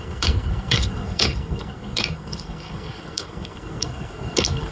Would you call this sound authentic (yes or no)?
no